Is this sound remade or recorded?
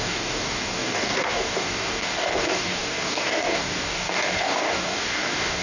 remade